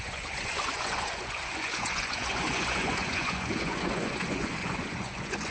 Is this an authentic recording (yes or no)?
no